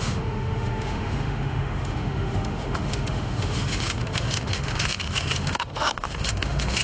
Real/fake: fake